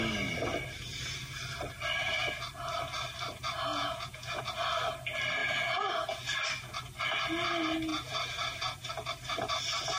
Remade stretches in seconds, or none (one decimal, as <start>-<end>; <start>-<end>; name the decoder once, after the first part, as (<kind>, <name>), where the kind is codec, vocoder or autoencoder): 3.7-4.4 (vocoder, Vocos); 5.4-6.2; 7.9-8.9